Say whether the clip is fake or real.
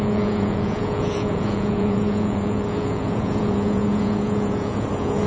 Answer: fake